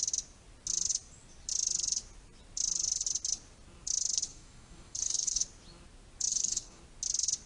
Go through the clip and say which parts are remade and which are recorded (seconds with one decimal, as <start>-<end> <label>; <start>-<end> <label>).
0.0-4.3 recorded; 4.3-5.4 remade; 5.4-6.3 recorded; 6.3-6.8 remade; 6.8-7.5 recorded